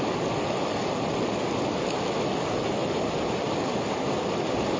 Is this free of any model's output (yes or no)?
yes